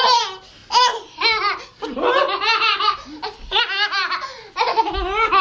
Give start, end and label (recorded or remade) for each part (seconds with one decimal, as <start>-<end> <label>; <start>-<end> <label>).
0.0-5.4 recorded